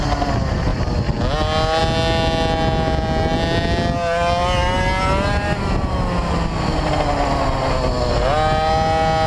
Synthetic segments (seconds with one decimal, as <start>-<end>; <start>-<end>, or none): none